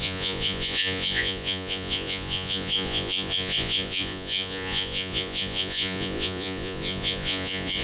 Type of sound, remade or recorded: remade